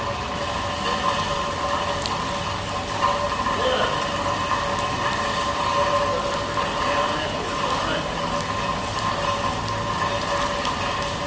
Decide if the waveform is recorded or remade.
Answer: recorded